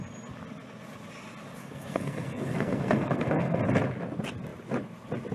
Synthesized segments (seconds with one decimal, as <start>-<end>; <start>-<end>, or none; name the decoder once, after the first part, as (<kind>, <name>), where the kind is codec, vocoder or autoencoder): 1.6-3.6 (codec, SNAC)